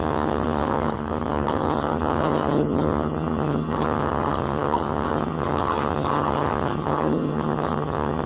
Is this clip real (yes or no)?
no